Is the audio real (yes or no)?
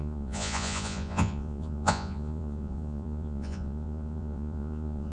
no